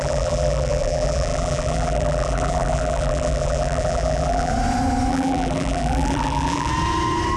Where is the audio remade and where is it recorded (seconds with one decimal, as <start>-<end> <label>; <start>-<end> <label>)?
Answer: 0.0-4.5 remade; 4.5-5.1 recorded; 5.1-6.7 remade; 6.7-7.4 recorded